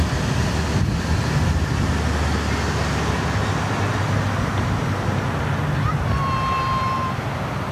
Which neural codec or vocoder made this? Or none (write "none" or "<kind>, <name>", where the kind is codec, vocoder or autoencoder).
none